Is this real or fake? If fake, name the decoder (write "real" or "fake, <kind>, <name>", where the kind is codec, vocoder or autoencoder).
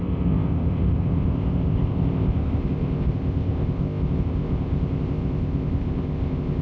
fake, codec, ZipCodec